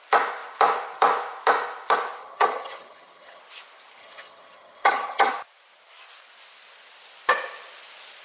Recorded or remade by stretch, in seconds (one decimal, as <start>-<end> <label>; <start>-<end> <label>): 0.0-2.2 recorded; 2.2-3.4 remade; 3.4-4.0 recorded; 4.0-5.3 remade; 5.3-8.2 recorded